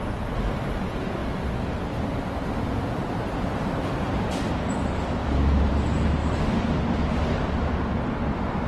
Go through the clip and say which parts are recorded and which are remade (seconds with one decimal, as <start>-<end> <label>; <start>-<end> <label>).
0.0-1.2 recorded; 1.2-4.5 remade; 4.5-5.2 recorded; 5.2-5.7 remade; 5.7-6.2 recorded; 6.2-6.8 remade; 6.8-8.7 recorded